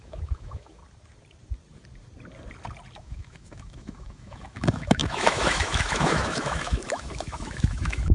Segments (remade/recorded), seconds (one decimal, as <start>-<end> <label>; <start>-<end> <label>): 0.0-0.8 remade; 0.8-3.0 recorded; 3.0-8.1 remade